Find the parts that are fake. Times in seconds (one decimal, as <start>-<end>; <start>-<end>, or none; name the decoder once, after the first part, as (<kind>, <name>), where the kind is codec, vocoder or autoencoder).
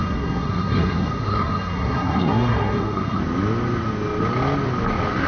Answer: 0.0-3.2 (codec, SNAC)